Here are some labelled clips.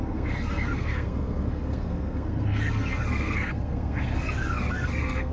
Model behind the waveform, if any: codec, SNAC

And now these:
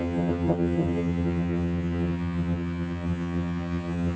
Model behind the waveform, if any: vocoder, HiFi-GAN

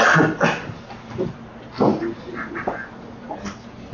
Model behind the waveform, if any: none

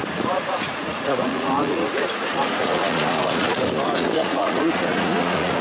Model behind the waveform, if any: vocoder, Vocos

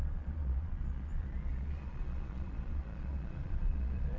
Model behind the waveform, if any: vocoder, Vocos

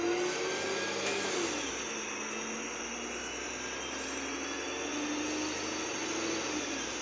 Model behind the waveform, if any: none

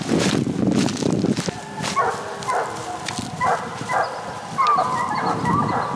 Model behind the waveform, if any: none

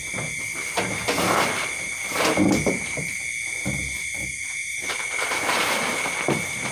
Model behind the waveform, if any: none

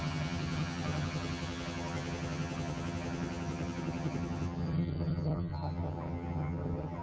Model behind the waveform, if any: vocoder, HiFi-GAN